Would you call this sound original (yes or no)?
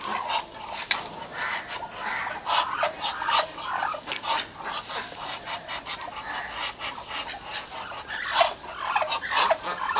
yes